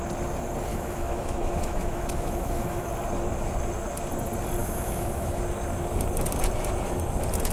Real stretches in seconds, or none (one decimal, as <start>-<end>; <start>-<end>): 0.0-0.7; 2.9-4.6; 5.4-7.5